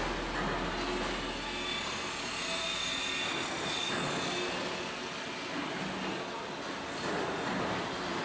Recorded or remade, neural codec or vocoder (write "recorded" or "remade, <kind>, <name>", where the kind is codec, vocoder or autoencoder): recorded